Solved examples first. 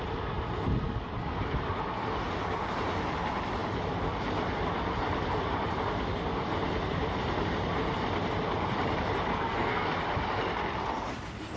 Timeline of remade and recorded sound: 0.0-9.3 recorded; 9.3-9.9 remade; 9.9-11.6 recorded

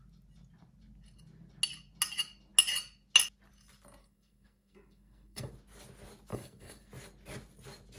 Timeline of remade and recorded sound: 0.0-4.0 recorded; 4.0-5.5 remade; 5.5-6.3 recorded; 6.3-6.9 remade; 6.9-8.0 recorded